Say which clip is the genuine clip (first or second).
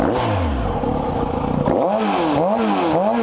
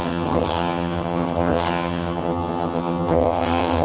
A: first